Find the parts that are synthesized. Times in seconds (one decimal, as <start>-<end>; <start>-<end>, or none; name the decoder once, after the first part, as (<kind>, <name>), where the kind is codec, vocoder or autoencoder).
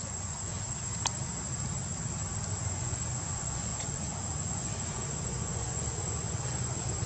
0.0-0.5 (vocoder, Vocos); 2.6-7.1